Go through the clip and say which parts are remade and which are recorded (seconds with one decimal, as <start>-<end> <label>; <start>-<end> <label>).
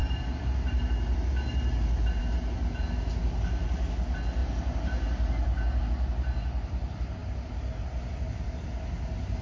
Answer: 0.0-9.4 recorded